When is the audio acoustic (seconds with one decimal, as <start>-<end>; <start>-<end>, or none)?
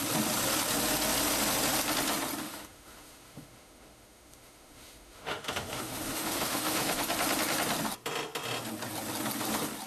0.0-2.4; 7.0-9.9